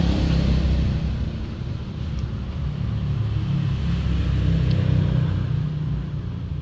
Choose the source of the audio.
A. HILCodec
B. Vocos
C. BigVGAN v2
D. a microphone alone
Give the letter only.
D